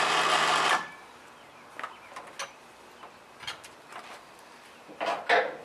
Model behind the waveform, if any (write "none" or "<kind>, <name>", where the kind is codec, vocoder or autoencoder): none